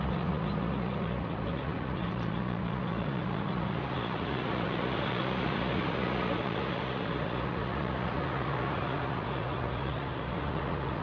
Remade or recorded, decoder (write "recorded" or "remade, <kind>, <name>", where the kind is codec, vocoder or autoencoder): remade, vocoder, Vocos